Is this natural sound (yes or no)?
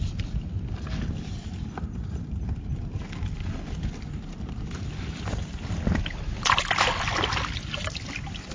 yes